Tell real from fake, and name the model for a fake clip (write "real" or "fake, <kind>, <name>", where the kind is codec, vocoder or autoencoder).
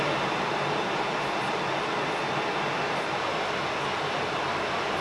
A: real